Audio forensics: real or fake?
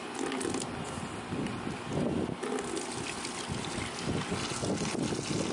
real